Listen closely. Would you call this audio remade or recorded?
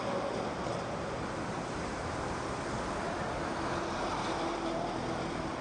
recorded